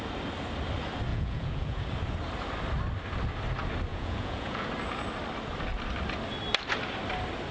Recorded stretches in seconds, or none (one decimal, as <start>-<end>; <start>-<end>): 0.0-1.1; 1.9-3.9; 4.7-7.5